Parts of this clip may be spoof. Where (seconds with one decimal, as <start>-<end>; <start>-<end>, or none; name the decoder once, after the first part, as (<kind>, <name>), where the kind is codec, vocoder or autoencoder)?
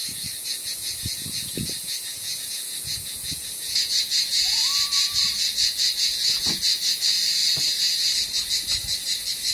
0.0-4.7 (vocoder, Vocos); 5.6-6.6